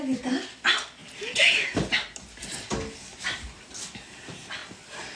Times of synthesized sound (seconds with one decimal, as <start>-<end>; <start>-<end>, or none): none